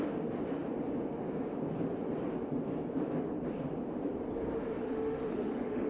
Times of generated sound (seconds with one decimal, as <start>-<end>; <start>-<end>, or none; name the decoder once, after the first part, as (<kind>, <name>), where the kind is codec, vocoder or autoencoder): 4.8-5.9 (autoencoder, DAC-VAE)